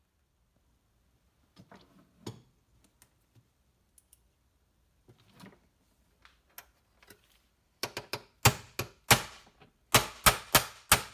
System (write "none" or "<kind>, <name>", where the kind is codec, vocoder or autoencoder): none